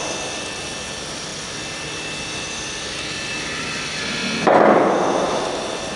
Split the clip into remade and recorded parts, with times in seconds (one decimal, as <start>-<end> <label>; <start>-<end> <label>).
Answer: 0.0-6.0 recorded